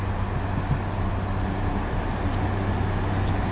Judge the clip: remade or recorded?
recorded